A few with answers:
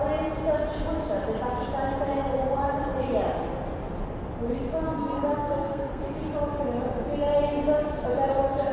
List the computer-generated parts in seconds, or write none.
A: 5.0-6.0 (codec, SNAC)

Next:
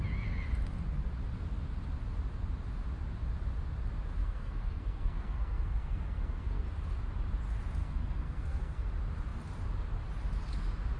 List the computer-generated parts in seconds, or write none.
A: 4.2-6.6 (codec, SNAC); 7.8-8.9

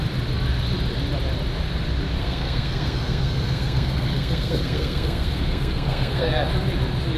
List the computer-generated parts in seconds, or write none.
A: 2.2-6.5 (codec, SNAC)

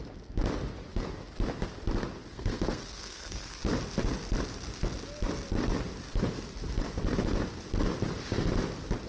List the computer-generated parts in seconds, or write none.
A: 2.3-3.6 (codec, SNAC)

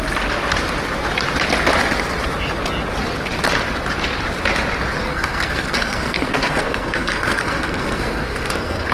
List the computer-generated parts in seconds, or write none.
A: 5.1-8.9 (codec, SNAC)